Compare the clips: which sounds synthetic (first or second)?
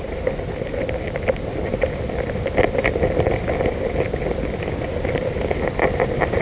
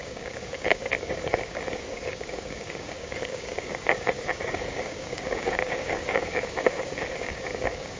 second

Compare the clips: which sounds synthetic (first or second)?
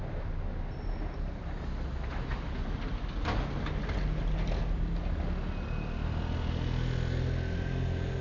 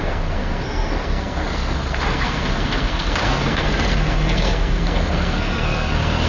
second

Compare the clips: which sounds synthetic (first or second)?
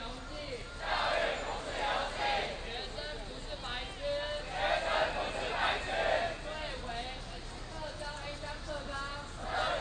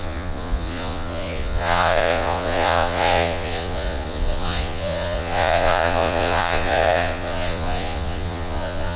second